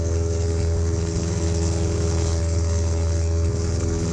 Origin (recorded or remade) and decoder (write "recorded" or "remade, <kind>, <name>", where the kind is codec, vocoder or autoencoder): remade, codec, SNAC